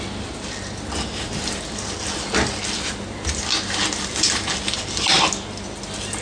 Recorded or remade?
recorded